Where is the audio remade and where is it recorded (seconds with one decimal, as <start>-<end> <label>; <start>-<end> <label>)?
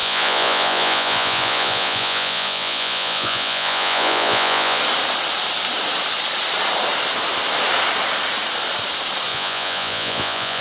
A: 0.0-4.8 remade; 4.8-9.3 recorded; 9.3-10.6 remade